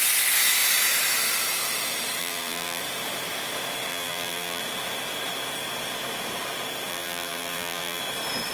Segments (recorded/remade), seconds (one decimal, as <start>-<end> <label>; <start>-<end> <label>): 0.0-2.2 recorded; 2.2-2.8 remade; 2.8-3.9 recorded; 3.9-4.6 remade; 4.6-6.9 recorded; 6.9-8.0 remade; 8.0-8.5 recorded